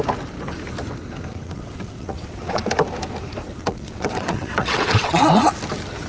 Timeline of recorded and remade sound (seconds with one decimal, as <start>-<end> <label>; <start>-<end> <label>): 0.0-1.3 recorded; 1.3-2.6 remade; 2.6-3.6 recorded; 3.6-5.5 remade; 5.5-6.1 recorded